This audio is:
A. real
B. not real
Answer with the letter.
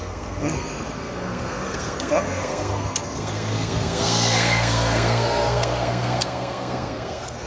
B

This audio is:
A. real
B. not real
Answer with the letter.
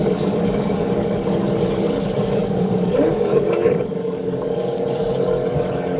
B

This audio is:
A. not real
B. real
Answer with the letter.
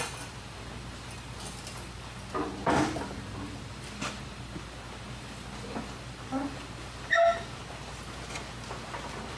B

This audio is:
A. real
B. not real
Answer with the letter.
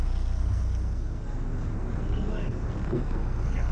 B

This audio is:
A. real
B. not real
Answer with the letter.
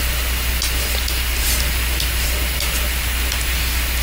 A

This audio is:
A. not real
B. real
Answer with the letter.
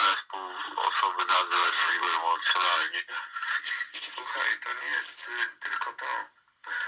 B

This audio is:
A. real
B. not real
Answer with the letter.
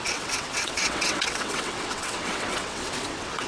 B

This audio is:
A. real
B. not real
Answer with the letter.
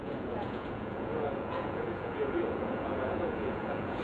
B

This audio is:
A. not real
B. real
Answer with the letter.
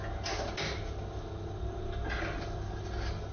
B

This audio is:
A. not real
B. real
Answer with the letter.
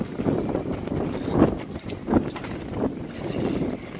B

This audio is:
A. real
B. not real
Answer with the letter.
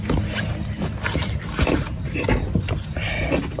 A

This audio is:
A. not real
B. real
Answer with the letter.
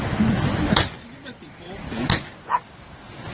B